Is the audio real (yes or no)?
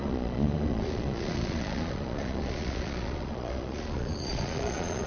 no